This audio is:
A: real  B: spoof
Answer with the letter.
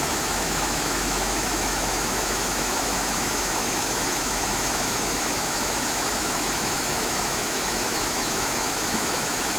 B